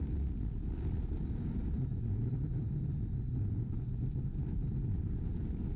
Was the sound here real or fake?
real